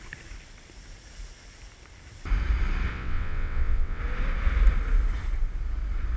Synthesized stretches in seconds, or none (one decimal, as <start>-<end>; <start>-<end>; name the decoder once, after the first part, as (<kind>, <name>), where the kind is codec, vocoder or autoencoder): 2.9-4.0 (vocoder, WaveNeXt)